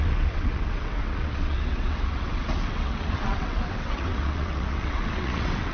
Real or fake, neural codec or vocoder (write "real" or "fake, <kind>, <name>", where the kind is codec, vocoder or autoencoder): fake, vocoder, WaveNeXt